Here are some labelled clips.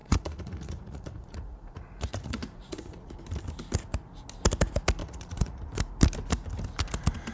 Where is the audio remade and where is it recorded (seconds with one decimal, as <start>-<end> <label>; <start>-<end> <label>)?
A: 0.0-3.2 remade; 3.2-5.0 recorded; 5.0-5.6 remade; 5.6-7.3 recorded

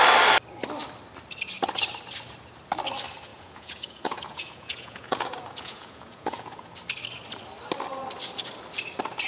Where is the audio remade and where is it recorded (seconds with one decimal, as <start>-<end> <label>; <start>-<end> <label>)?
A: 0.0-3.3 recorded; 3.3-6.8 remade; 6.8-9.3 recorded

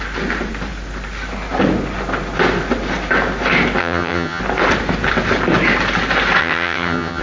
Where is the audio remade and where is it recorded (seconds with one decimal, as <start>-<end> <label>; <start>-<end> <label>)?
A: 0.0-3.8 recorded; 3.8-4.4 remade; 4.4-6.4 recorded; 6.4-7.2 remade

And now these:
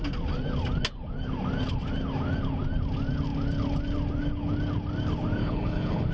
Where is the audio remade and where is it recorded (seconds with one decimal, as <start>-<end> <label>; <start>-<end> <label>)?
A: 0.0-5.4 recorded; 5.4-6.1 remade

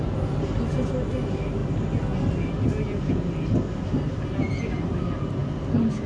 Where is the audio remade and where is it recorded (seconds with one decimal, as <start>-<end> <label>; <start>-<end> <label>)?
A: 0.0-6.1 recorded

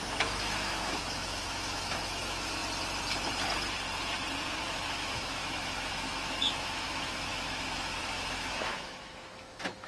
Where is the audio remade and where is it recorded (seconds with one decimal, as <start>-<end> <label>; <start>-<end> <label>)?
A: 0.0-2.6 remade; 2.6-4.6 recorded; 4.6-9.9 remade